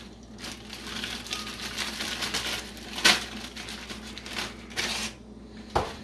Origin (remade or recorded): recorded